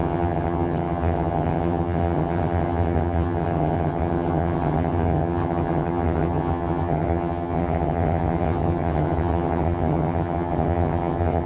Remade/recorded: remade